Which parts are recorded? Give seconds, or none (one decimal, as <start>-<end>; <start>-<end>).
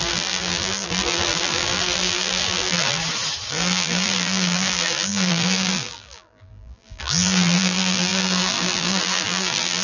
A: 3.0-3.5